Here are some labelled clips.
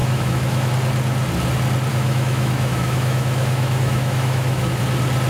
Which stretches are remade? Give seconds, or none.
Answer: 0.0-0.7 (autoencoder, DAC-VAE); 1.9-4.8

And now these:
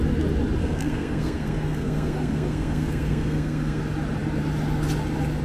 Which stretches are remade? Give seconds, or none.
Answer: 0.6-3.8 (codec, SNAC)

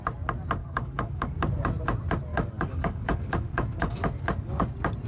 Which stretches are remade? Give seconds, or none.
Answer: 0.6-1.3 (codec, DAC); 2.3-4.0